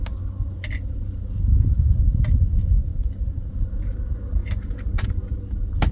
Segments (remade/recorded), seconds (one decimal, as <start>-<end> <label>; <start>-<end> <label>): 0.0-2.9 recorded; 2.9-3.5 remade; 3.5-4.4 recorded; 4.4-5.1 remade; 5.1-5.9 recorded